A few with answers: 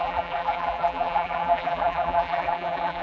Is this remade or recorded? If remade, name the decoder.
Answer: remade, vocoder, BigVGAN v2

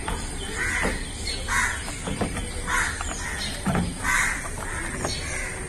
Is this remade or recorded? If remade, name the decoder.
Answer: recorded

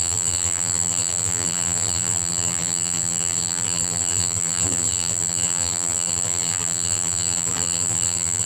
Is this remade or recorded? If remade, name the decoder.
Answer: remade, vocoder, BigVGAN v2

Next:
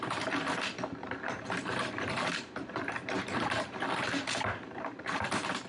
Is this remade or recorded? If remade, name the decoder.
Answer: remade, vocoder, BigVGAN v2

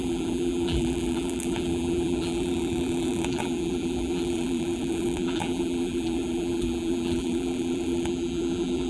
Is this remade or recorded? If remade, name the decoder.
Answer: remade, vocoder, BigVGAN v2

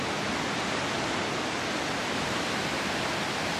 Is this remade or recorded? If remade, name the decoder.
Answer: recorded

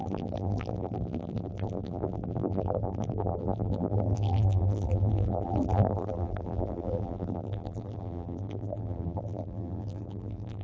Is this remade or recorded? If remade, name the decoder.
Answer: remade, vocoder, BigVGAN v2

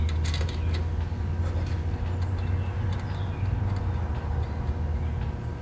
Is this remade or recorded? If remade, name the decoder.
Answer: recorded